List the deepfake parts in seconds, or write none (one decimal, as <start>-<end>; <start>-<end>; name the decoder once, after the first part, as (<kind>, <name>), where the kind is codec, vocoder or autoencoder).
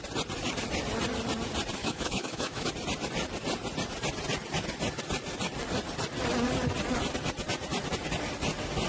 1.8-2.7 (autoencoder, DAC-VAE)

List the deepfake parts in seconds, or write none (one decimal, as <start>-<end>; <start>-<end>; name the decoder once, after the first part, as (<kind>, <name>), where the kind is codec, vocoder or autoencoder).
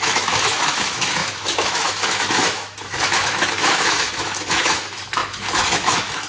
0.0-6.3 (autoencoder, DAC-VAE)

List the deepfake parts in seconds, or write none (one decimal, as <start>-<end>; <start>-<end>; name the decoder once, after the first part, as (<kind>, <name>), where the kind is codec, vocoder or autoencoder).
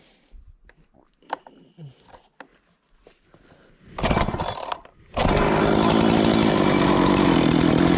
none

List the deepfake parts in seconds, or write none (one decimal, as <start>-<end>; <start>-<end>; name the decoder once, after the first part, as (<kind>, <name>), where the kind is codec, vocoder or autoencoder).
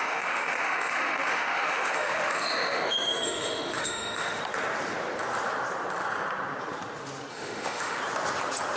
0.0-4.4 (autoencoder, DAC-VAE); 7.3-8.0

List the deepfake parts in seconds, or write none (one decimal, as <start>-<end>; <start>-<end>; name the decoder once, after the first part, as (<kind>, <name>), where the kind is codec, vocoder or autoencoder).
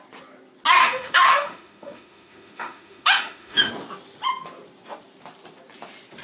0.8-3.7 (autoencoder, DAC-VAE)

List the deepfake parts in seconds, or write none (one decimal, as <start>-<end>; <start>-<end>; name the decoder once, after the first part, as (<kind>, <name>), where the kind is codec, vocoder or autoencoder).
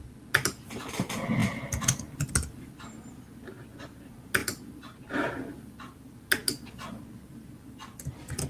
none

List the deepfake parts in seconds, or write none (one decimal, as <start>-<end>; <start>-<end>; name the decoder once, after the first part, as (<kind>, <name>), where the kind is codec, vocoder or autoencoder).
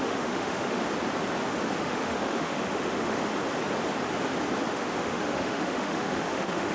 0.0-0.8 (autoencoder, DAC-VAE); 1.8-3.3; 4.7-6.7